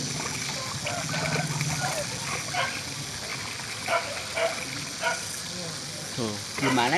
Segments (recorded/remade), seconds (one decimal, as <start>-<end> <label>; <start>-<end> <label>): 0.0-7.0 recorded